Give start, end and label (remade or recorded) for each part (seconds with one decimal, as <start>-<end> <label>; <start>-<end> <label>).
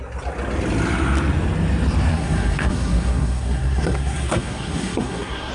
0.0-2.1 recorded; 2.1-5.5 remade